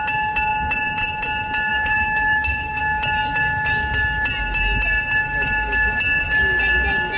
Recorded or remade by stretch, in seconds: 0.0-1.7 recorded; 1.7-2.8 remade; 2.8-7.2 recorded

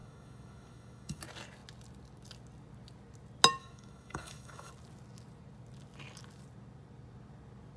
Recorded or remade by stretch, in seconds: 0.0-1.2 remade; 1.2-3.6 recorded; 3.6-4.7 remade; 4.7-7.8 recorded

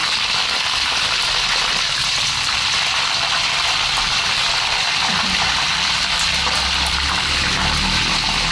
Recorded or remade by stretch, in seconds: 0.0-8.5 remade